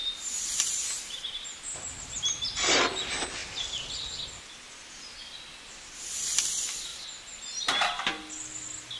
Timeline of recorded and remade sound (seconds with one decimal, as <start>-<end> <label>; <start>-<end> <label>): 0.0-2.8 remade; 2.8-9.0 recorded